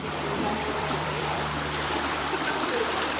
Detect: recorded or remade remade